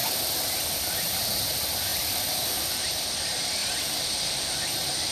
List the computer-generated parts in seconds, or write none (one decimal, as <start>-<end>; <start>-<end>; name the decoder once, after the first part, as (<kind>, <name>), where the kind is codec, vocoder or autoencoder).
none